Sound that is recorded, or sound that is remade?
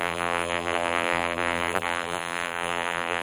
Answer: remade